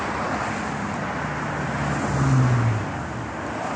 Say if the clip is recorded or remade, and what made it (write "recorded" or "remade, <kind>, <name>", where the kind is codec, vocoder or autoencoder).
recorded